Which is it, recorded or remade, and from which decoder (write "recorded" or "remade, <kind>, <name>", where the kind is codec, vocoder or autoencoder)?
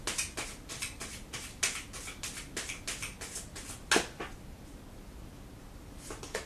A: recorded